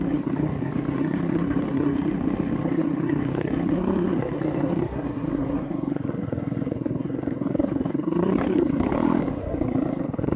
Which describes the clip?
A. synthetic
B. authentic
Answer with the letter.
A